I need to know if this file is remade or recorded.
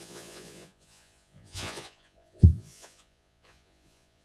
remade